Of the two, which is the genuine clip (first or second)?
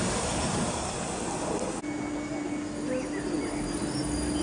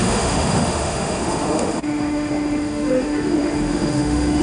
first